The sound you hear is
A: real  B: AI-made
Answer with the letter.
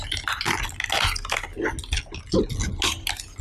A